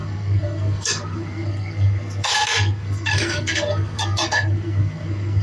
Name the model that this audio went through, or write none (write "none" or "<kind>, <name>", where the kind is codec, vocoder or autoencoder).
codec, SNAC